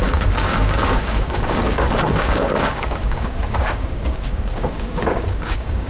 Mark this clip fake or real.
fake